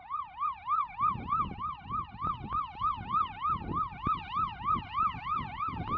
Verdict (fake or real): fake